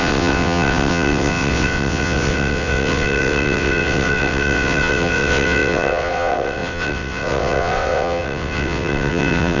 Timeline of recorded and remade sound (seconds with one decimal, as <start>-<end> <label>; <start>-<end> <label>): 0.0-9.6 remade